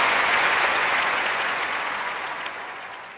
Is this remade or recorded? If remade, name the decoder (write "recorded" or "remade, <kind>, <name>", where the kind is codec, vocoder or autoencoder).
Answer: remade, vocoder, Vocos